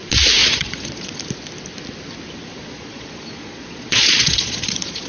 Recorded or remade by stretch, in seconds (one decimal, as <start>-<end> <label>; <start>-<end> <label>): 0.0-0.4 recorded; 0.4-1.2 remade; 1.2-2.5 recorded; 2.5-5.1 remade